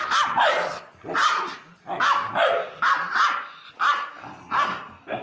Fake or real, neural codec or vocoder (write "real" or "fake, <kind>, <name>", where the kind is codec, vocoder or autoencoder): real